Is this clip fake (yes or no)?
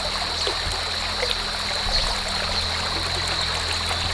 no